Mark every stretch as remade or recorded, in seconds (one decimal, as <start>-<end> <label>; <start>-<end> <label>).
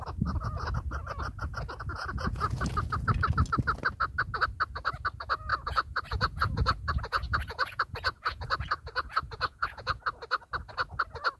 0.0-1.9 recorded; 1.9-2.6 remade; 2.6-5.5 recorded; 5.5-10.0 remade; 10.0-11.4 recorded